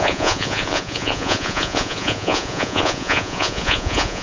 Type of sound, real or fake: fake